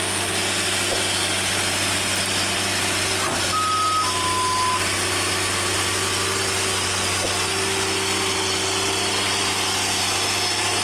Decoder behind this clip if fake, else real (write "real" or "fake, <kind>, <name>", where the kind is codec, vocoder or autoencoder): real